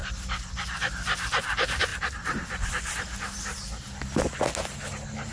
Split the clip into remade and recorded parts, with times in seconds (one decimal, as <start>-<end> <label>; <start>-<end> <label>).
0.0-5.3 recorded